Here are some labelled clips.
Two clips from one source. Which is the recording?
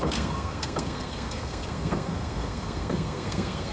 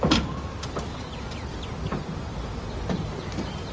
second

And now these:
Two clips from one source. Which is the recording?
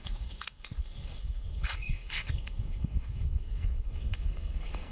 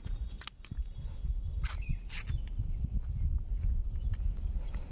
second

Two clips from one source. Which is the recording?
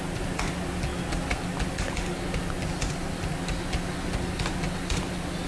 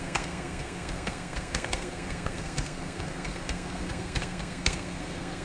first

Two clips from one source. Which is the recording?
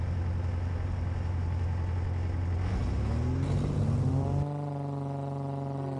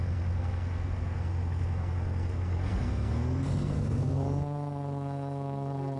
first